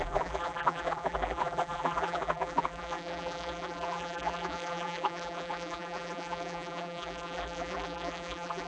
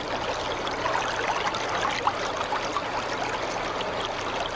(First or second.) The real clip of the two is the second